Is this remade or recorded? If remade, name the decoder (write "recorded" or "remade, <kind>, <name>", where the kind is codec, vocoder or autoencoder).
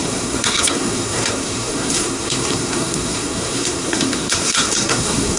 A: remade, codec, SNAC